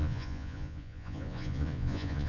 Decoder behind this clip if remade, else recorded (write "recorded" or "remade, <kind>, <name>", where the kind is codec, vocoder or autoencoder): remade, vocoder, Vocos